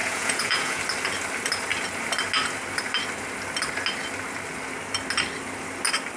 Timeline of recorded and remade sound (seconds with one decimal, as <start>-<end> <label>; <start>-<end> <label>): 0.0-0.8 remade; 0.8-6.2 recorded